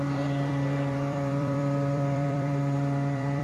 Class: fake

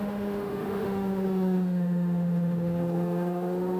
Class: fake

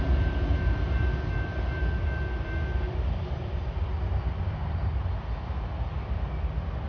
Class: real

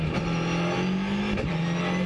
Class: real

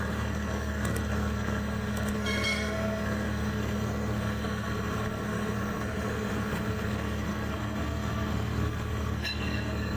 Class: fake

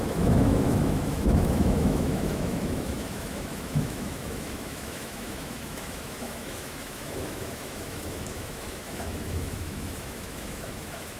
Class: fake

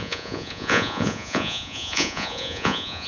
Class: fake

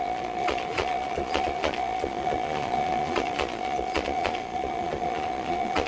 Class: fake